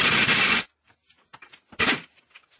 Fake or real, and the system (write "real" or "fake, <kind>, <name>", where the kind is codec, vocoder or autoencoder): fake, vocoder, BigVGAN v2